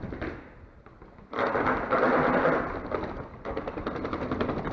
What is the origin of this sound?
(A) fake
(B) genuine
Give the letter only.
B